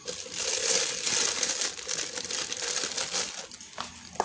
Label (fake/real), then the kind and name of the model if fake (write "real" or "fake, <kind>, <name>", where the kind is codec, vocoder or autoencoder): real